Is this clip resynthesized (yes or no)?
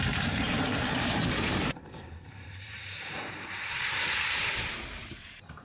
yes